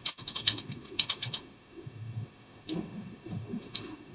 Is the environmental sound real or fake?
fake